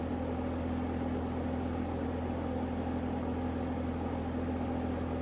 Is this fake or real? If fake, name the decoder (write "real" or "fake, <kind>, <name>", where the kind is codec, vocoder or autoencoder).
real